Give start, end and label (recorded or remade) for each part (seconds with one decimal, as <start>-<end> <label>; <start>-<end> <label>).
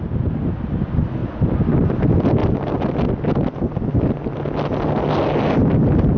0.0-6.2 recorded